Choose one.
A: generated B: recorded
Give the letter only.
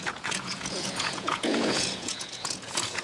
A